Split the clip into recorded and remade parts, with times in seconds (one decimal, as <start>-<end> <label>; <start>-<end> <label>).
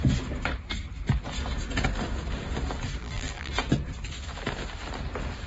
0.0-3.0 recorded; 3.0-3.5 remade; 3.5-5.5 recorded